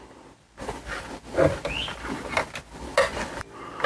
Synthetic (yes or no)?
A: no